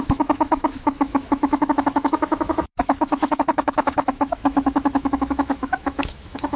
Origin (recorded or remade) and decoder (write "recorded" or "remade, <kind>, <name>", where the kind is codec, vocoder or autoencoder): remade, autoencoder, DAC-VAE